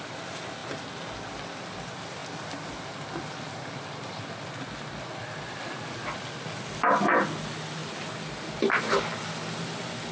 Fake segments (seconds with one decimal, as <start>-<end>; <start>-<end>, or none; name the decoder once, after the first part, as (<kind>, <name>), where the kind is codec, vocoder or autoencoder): none